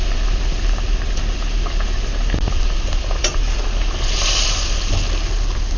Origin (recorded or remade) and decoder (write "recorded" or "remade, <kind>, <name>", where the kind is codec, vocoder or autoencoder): remade, vocoder, BigVGAN v2